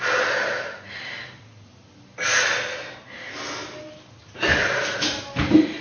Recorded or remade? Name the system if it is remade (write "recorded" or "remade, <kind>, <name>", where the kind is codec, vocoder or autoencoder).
recorded